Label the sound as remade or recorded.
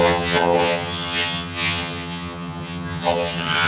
remade